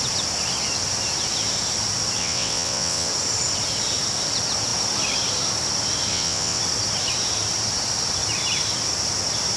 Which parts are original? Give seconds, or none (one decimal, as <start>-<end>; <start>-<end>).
0.0-2.2; 3.1-6.1; 6.6-9.6